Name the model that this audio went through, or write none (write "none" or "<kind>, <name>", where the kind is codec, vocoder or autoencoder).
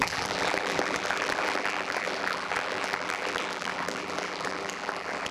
vocoder, BigVGAN v2